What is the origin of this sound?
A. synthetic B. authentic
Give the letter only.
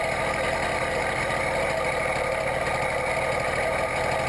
B